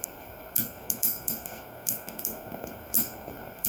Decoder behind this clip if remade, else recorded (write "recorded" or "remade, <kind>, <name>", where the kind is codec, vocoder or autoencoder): remade, codec, SNAC